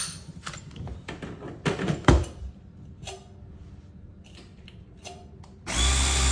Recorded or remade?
recorded